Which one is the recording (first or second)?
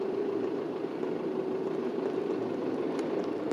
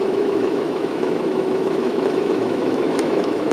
first